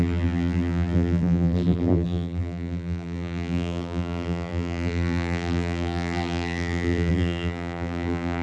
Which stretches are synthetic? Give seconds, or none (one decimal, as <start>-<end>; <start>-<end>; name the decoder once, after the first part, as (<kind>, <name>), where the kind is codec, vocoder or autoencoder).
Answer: 0.0-8.4 (vocoder, BigVGAN v2)